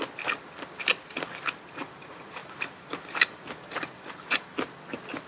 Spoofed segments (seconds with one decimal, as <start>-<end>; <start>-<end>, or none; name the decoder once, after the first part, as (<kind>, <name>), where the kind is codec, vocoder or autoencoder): 0.7-5.3 (vocoder, BigVGAN v2)